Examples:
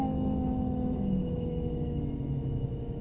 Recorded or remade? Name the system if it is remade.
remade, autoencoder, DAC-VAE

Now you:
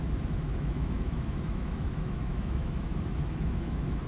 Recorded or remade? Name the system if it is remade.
remade, autoencoder, DAC-VAE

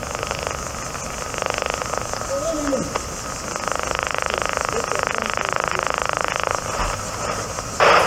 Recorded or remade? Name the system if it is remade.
recorded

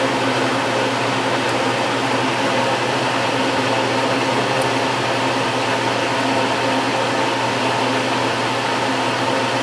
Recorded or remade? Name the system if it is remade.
recorded